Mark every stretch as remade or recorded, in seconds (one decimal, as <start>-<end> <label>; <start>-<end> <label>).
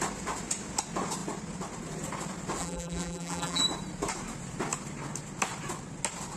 0.0-2.6 recorded; 2.6-3.6 remade; 3.6-6.4 recorded